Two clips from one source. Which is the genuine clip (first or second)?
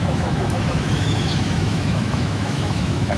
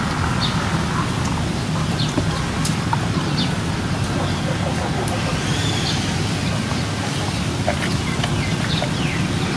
second